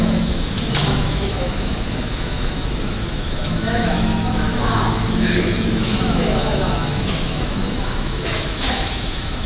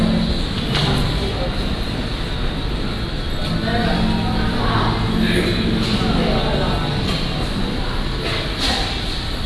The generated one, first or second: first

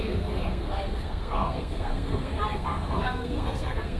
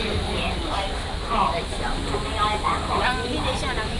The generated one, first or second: first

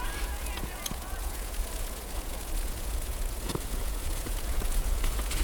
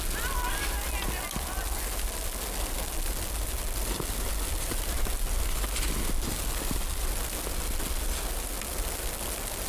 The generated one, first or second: first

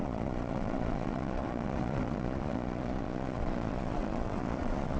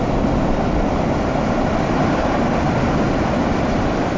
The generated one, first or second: first